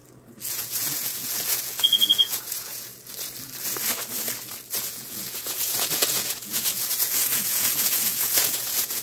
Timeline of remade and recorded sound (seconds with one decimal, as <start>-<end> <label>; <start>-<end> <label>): 0.0-0.5 recorded; 0.5-2.9 remade; 2.9-4.8 recorded; 4.8-9.0 remade